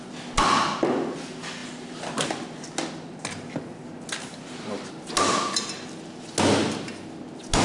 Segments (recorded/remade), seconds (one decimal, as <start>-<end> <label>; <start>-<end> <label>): 0.0-7.6 recorded